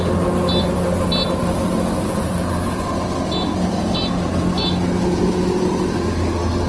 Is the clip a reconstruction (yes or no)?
no